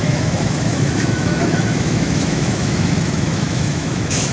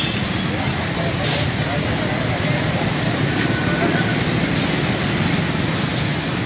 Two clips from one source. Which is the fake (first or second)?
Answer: first